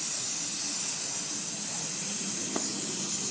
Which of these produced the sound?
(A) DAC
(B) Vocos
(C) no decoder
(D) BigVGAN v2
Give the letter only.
C